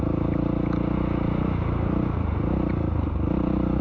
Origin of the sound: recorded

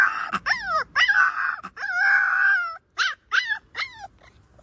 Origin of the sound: remade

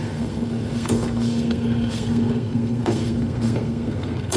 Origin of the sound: remade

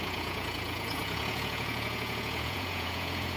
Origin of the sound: remade